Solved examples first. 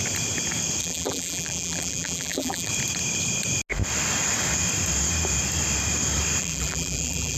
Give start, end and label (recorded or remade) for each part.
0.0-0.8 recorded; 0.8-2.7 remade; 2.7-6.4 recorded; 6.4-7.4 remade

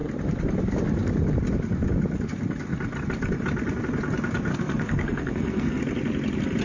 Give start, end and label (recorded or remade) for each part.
0.0-4.5 recorded; 4.5-5.8 remade; 5.8-6.6 recorded